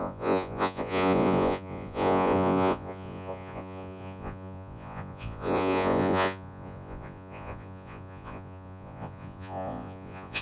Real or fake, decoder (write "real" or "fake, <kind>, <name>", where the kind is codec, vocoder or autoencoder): fake, vocoder, Vocos